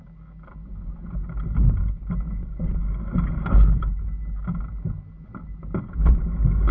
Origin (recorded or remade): recorded